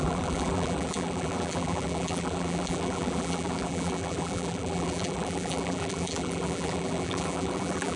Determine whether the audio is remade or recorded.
remade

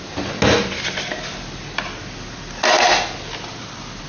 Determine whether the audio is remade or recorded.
recorded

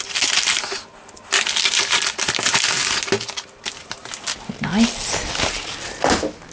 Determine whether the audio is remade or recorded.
recorded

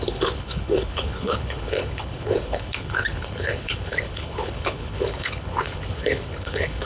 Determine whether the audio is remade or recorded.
remade